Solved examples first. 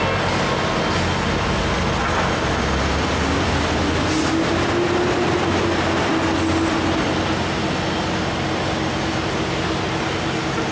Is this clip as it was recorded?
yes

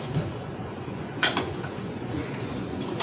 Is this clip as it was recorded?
no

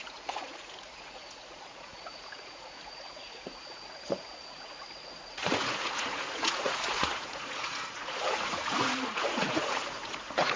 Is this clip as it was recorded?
no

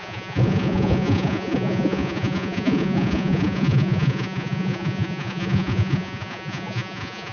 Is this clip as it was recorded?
no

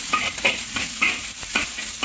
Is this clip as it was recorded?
no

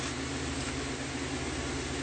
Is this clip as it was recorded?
yes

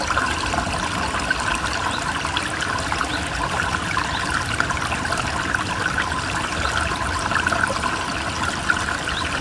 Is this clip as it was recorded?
yes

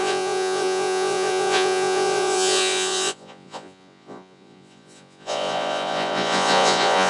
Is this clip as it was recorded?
no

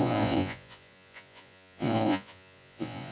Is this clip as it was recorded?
no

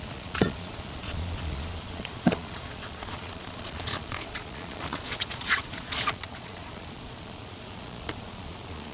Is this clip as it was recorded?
no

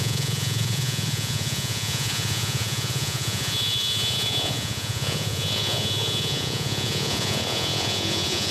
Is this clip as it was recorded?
no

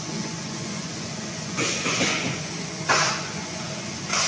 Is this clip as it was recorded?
no